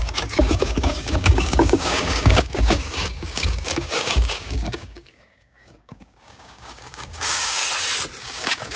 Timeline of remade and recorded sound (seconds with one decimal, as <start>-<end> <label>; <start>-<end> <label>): 0.0-7.6 remade; 7.6-8.2 recorded; 8.2-8.8 remade